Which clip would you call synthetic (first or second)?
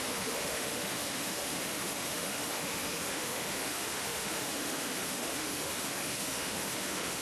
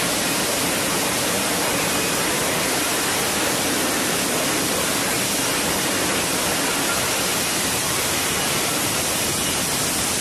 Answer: first